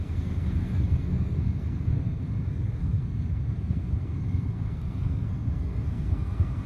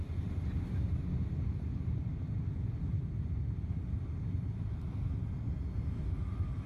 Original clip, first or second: second